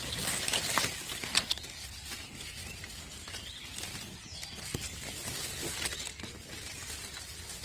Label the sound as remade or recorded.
recorded